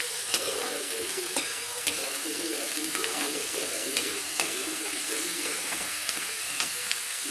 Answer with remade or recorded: remade